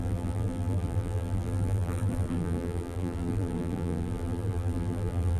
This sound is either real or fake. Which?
fake